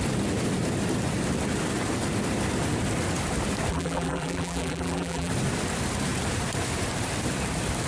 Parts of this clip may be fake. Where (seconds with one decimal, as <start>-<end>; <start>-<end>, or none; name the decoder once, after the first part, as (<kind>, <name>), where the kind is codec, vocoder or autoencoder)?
3.7-5.3 (vocoder, BigVGAN v2)